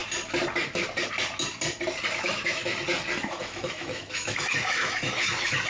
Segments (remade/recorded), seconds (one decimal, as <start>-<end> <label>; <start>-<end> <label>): 0.0-2.2 recorded; 2.2-2.7 remade; 2.7-3.4 recorded; 3.4-5.7 remade